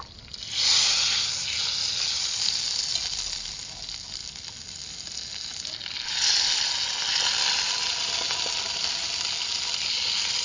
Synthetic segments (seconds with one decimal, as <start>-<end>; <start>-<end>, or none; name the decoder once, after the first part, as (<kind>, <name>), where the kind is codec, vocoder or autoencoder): none